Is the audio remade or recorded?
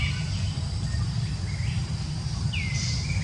recorded